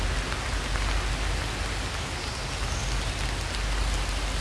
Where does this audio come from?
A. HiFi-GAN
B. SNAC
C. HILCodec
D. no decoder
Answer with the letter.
D